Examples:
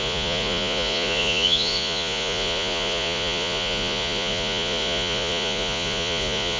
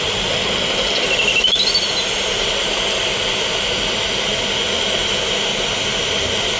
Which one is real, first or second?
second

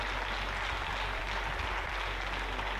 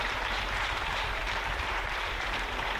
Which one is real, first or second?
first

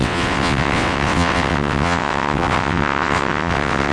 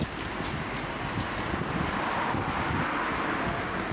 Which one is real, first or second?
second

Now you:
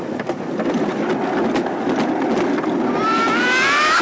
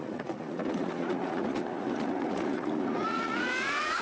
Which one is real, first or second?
first